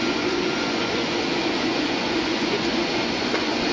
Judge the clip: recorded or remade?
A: remade